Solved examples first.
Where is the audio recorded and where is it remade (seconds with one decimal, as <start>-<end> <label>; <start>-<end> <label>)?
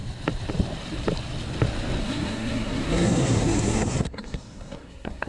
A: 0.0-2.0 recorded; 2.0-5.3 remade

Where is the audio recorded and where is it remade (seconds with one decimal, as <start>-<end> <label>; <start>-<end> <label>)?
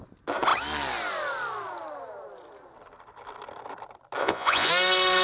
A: 0.0-4.2 recorded; 4.2-4.7 remade; 4.7-5.2 recorded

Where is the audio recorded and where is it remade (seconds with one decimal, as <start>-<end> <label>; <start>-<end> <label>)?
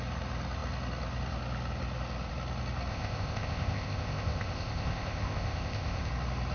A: 0.0-2.9 recorded; 2.9-6.1 remade; 6.1-6.5 recorded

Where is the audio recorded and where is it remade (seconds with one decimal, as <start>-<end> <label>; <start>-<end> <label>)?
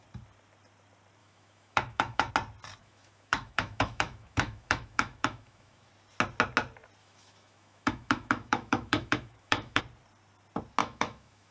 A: 0.0-1.2 recorded; 1.2-2.3 remade; 2.3-2.8 recorded; 2.8-5.9 remade; 5.9-7.0 recorded; 7.0-9.8 remade; 9.8-10.8 recorded; 10.8-11.5 remade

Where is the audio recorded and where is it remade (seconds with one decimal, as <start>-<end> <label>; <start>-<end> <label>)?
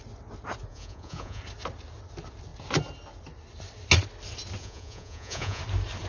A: 0.0-0.7 recorded; 0.7-1.4 remade; 1.4-4.6 recorded; 4.6-5.6 remade; 5.6-6.1 recorded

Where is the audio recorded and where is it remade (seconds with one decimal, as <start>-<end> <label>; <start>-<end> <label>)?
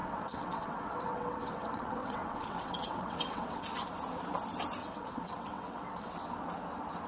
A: 0.0-3.6 remade; 3.6-4.8 recorded; 4.8-6.1 remade; 6.1-7.1 recorded